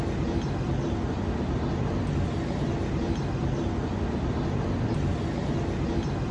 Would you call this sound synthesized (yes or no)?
no